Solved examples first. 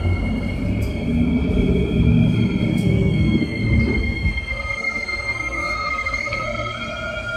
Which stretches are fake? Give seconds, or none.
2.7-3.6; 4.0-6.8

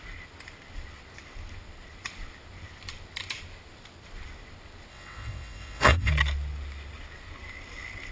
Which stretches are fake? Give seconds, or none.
4.9-6.1

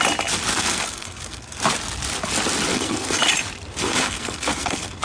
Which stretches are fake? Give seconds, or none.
0.5-1.6; 2.7-3.2; 3.8-5.0

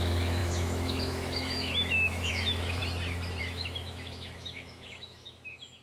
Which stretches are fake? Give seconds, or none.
0.0-2.8; 3.4-5.8

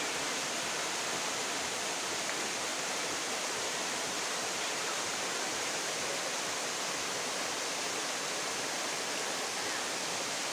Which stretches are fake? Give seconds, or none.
2.7-5.9

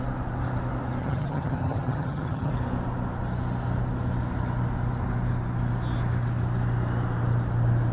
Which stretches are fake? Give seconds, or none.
1.0-2.5

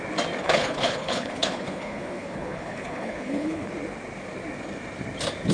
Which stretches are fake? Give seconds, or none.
0.4-3.7

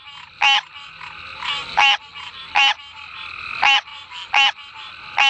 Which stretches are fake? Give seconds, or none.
none